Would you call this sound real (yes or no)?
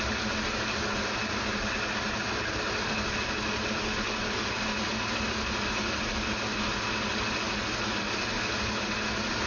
yes